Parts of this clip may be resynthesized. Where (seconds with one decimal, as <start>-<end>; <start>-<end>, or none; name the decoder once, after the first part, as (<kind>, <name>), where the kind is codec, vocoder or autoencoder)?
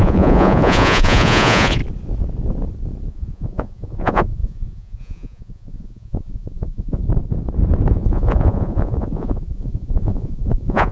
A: 0.0-1.8 (vocoder, Vocos); 3.1-7.0; 7.9-10.9